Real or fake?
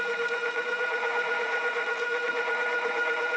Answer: fake